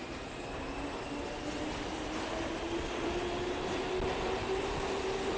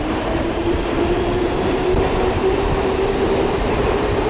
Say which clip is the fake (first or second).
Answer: second